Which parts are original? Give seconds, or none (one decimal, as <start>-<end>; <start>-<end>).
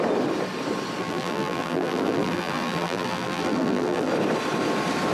0.0-1.0; 4.1-5.1